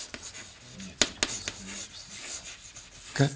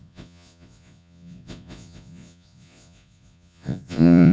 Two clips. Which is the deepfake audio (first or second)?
second